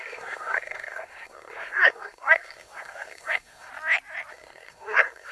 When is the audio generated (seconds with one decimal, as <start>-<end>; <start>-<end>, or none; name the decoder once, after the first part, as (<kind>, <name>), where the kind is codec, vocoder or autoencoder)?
0.0-3.7 (codec, SNAC); 4.3-5.3